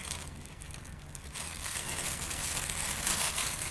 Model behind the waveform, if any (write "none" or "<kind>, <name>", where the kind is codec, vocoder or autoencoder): codec, SNAC